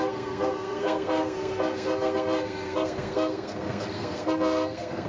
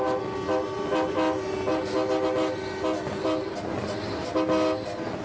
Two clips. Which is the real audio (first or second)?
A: second